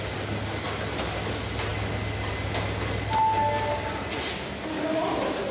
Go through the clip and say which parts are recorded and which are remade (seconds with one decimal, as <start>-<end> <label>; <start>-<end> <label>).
0.0-5.5 recorded